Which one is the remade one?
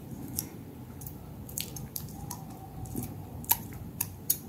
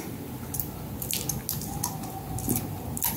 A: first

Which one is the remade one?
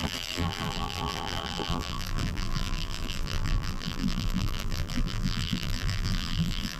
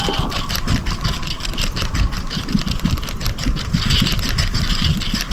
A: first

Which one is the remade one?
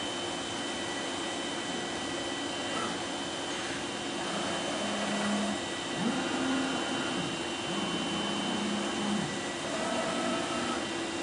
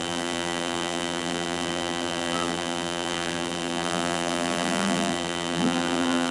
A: second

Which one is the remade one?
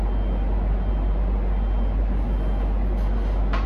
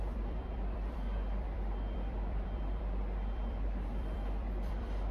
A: second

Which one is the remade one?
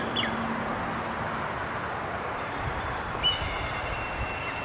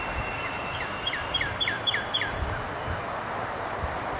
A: second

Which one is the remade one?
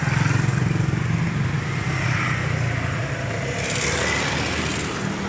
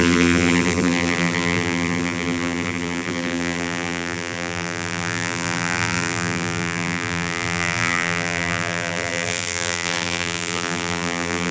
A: second